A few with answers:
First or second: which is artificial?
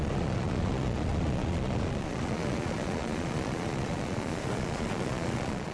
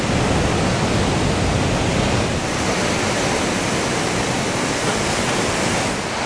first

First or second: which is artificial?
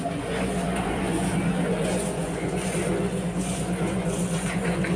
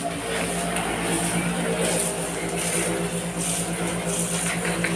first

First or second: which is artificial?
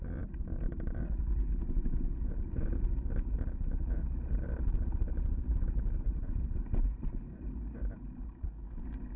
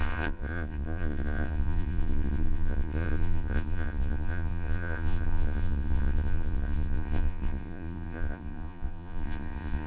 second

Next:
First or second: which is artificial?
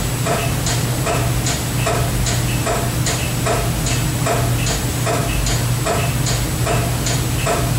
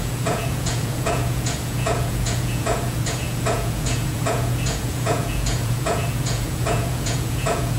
second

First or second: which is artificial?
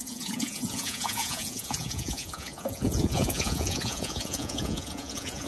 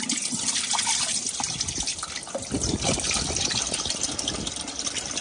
first